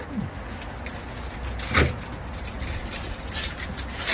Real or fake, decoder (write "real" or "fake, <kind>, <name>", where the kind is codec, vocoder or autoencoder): real